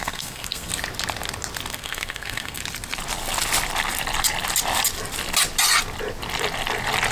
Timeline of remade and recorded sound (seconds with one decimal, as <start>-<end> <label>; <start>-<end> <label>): 0.0-0.7 remade; 0.7-1.7 recorded; 1.7-2.6 remade; 2.6-7.1 recorded